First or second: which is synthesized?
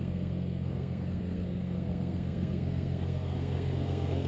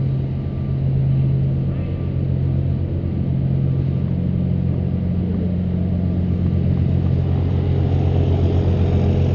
first